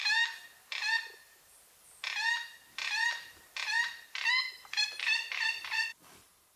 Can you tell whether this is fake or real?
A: fake